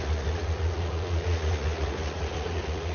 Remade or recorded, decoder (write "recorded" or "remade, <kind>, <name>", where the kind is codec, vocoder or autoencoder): remade, vocoder, Vocos